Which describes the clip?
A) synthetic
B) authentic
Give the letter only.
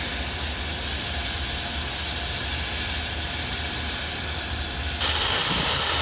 B